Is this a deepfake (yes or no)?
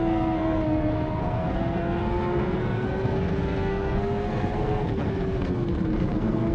yes